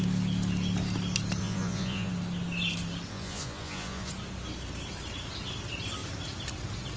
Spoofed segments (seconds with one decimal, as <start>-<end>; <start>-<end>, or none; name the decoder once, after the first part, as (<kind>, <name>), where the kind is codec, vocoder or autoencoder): 1.4-2.1 (vocoder, Vocos); 3.1-4.1